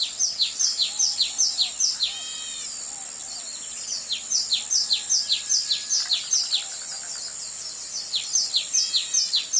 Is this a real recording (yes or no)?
yes